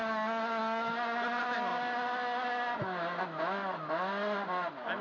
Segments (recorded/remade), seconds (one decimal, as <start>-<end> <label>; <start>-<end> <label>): 0.0-5.0 recorded